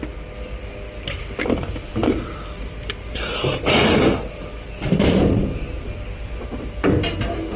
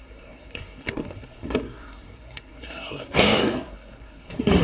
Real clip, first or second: first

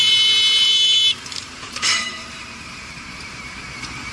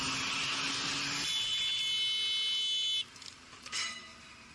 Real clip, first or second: second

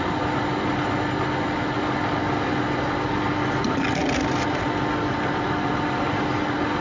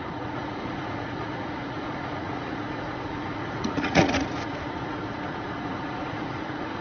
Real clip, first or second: first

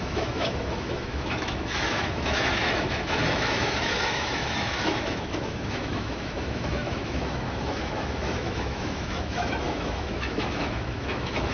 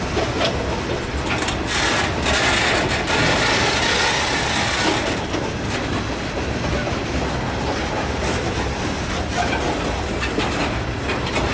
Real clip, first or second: second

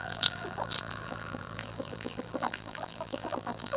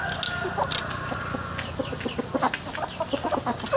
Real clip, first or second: second